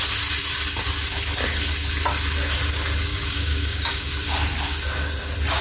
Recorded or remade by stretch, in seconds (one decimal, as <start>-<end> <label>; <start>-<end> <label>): 0.0-3.1 recorded; 3.1-4.1 remade; 4.1-5.6 recorded